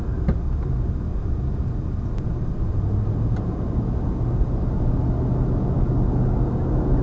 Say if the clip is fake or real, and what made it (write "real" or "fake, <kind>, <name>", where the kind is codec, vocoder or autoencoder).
real